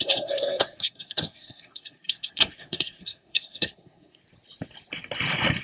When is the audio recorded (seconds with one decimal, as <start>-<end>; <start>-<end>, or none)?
4.2-5.6